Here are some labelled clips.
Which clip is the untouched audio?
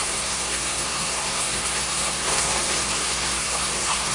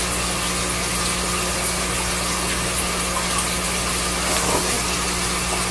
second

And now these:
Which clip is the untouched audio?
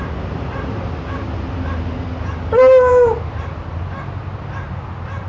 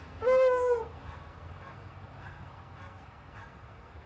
first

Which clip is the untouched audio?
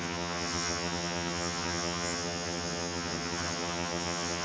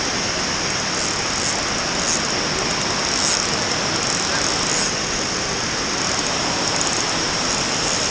second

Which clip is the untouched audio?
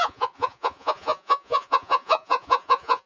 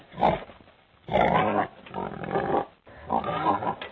second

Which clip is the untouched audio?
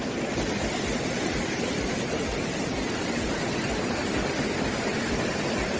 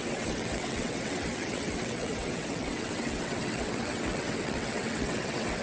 first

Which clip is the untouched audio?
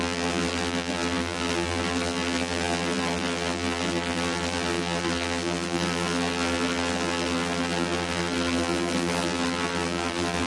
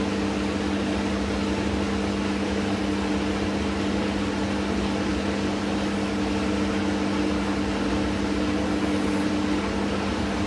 second